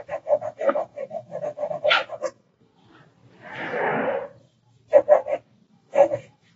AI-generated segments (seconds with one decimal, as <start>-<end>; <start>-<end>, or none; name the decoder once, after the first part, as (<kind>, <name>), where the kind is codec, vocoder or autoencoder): 0.0-2.7 (autoencoder, DAC-VAE); 5.7-6.6